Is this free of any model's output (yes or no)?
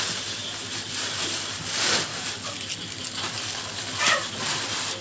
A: yes